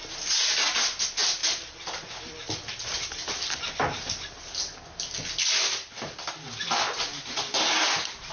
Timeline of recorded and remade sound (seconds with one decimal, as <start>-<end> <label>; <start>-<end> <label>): 0.0-8.3 recorded